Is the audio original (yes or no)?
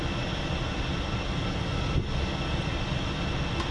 yes